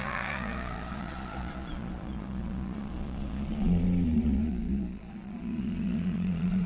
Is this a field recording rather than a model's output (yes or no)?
no